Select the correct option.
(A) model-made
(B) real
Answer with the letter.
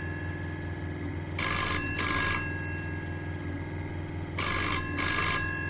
B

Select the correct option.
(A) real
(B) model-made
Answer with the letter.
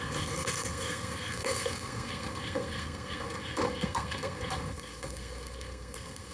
B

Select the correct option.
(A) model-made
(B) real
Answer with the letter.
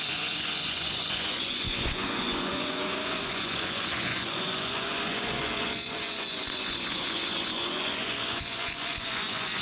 A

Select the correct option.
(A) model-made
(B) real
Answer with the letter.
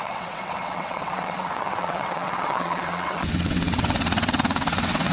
A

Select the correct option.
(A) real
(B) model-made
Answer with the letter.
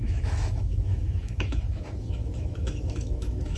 B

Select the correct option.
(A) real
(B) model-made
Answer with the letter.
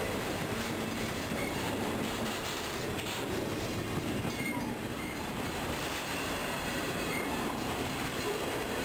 B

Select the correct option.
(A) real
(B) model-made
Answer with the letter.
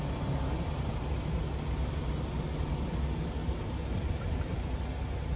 A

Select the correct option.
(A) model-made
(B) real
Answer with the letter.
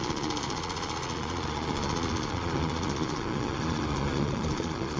A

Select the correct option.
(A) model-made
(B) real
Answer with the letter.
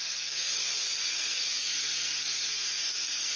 A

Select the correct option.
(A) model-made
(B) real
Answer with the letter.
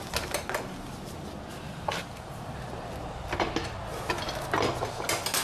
B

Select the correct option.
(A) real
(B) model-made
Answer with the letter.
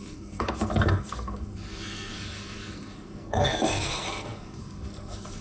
B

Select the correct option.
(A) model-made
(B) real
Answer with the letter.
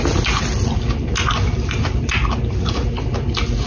B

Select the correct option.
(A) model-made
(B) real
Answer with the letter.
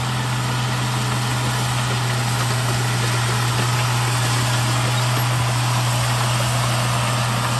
B